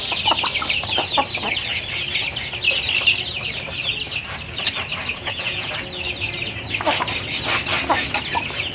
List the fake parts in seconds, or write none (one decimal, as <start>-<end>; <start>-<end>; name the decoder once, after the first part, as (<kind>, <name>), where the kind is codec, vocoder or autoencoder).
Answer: 5.1-5.7 (vocoder, Vocos)